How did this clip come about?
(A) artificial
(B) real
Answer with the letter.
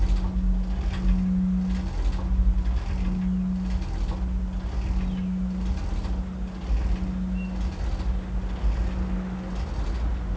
B